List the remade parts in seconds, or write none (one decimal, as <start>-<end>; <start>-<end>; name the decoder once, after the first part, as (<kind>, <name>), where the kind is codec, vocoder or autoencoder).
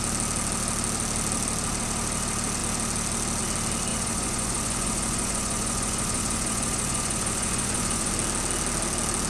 3.9-8.1 (vocoder, Vocos)